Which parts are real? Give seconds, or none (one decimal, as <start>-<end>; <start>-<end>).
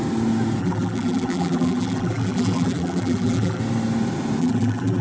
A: 0.0-0.6; 3.6-4.4